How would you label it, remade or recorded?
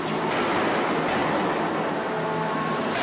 recorded